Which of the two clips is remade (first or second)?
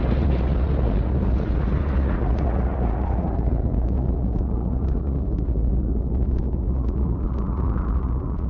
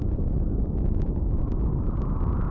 first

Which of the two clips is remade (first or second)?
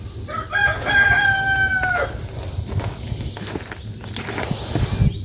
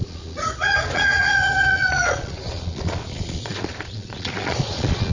second